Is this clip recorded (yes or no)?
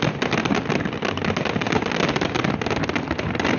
yes